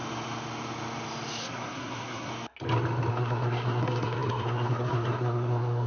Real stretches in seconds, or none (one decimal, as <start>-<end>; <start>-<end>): 0.0-1.4; 2.3-3.1